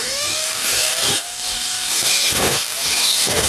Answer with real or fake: fake